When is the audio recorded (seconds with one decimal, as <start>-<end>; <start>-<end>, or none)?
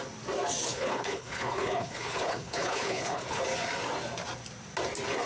0.0-0.7; 3.4-5.3